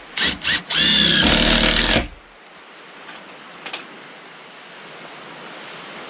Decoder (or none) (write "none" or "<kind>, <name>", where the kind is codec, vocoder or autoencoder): none